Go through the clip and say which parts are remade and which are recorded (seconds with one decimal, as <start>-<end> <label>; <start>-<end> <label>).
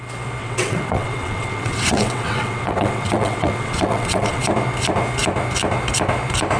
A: 0.0-0.4 recorded; 0.4-4.4 remade; 4.4-6.6 recorded